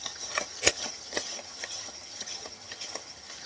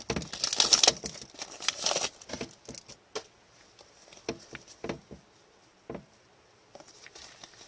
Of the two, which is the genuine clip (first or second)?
second